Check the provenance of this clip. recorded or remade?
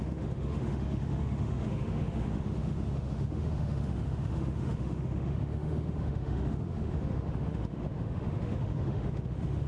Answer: remade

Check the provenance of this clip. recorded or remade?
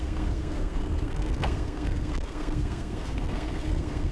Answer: remade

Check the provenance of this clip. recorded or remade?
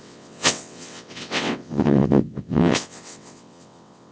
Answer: remade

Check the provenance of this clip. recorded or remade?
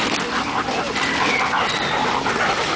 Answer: recorded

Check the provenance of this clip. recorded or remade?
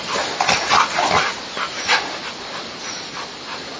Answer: recorded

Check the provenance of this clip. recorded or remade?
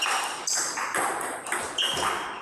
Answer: recorded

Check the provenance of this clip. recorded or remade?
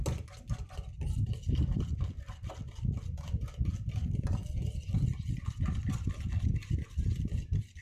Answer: recorded